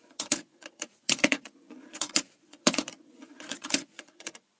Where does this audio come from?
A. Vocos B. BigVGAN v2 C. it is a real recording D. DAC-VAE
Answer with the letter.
A